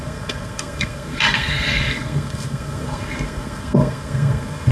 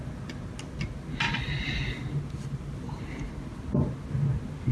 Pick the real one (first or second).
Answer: second